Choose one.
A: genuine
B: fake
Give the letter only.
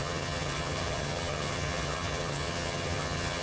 B